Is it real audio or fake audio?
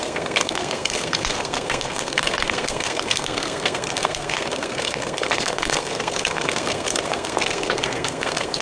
fake